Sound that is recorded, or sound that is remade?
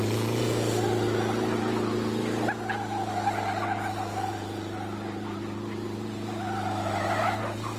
recorded